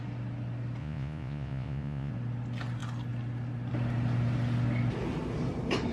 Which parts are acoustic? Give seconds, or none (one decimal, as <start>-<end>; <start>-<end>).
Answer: 0.0-0.8; 2.1-5.9